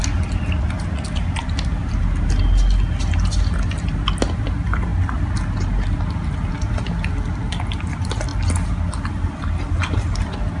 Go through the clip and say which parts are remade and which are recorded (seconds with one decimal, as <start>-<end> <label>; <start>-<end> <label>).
0.0-10.6 recorded